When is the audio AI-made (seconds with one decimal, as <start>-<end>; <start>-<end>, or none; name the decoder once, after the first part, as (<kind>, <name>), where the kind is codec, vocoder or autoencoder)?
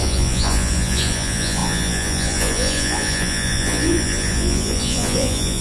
0.0-5.6 (vocoder, Vocos)